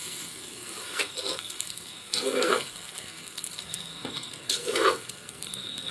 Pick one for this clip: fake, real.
fake